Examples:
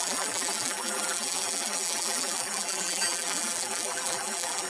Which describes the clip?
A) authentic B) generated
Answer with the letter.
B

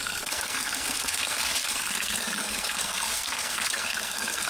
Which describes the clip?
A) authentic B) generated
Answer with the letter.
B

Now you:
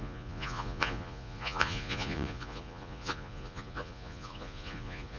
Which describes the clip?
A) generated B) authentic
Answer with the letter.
A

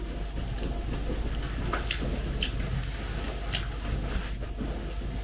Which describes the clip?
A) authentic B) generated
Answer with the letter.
A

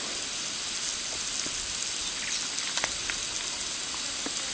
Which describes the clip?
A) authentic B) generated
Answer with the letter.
A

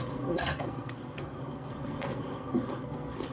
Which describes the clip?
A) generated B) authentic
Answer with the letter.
A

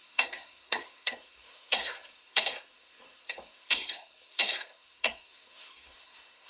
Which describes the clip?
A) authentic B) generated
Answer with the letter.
B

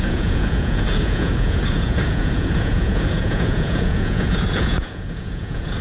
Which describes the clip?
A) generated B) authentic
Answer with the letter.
A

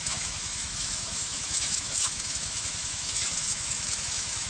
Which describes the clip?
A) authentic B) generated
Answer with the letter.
B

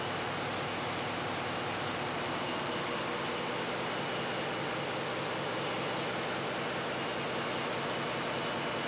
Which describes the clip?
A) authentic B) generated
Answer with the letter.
A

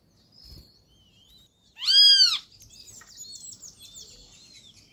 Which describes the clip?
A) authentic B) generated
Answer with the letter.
A